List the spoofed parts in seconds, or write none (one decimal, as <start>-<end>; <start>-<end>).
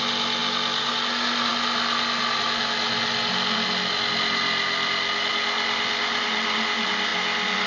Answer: none